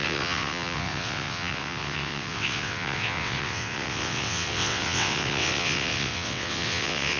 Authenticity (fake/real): fake